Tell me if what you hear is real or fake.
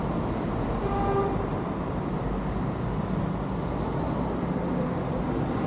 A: real